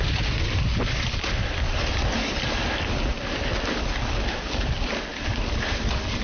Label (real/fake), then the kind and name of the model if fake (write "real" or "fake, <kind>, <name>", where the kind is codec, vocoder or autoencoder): real